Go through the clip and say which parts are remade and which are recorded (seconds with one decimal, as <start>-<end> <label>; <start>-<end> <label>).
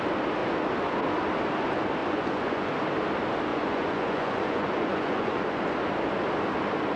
0.0-2.0 recorded; 2.0-2.7 remade; 2.7-3.5 recorded; 3.5-5.6 remade; 5.6-7.0 recorded